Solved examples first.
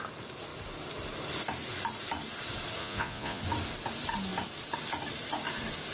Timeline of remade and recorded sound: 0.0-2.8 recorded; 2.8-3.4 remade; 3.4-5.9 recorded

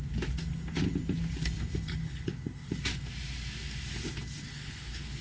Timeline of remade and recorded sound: 0.0-2.0 recorded; 2.0-2.7 remade; 2.7-4.5 recorded; 4.5-5.2 remade

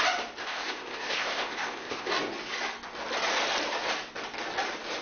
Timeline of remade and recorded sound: 0.0-0.4 recorded; 0.4-2.1 remade; 2.1-5.0 recorded

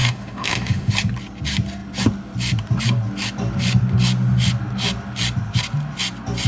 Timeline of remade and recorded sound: 0.0-0.9 remade; 0.9-6.5 recorded

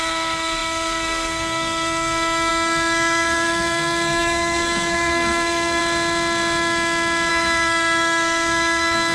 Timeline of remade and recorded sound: 0.0-5.8 remade; 5.8-7.3 recorded; 7.3-9.1 remade

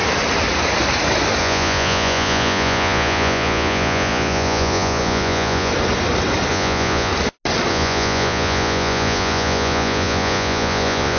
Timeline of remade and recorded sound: 0.0-1.4 recorded; 1.4-5.7 remade; 5.7-6.5 recorded; 6.5-7.1 remade; 7.1-7.7 recorded; 7.7-11.2 remade

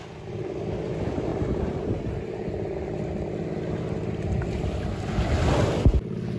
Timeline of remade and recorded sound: 0.0-6.4 recorded